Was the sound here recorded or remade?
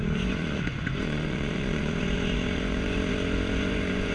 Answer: remade